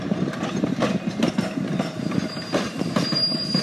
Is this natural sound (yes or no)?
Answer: no